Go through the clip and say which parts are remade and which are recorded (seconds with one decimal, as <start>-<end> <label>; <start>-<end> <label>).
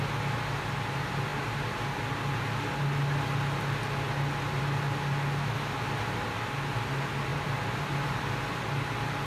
0.0-7.3 recorded; 7.3-8.4 remade; 8.4-9.3 recorded